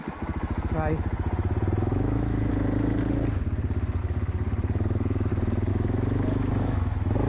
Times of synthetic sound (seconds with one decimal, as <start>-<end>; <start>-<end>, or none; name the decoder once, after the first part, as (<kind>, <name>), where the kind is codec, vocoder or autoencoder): 1.9-2.5 (autoencoder, DAC-VAE); 4.0-5.3; 5.7-7.3